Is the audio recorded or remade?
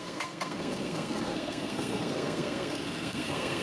remade